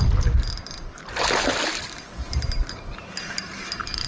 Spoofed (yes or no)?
no